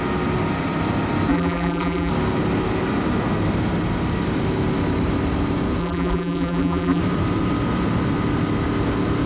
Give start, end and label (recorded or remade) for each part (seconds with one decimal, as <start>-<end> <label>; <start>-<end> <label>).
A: 0.0-1.3 recorded; 1.3-2.1 remade; 2.1-5.8 recorded; 5.8-7.0 remade; 7.0-9.3 recorded